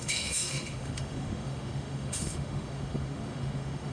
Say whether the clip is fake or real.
fake